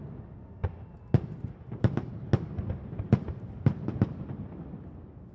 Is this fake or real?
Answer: real